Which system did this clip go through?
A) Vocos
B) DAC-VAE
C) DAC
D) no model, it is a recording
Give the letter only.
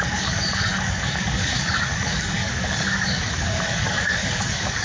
C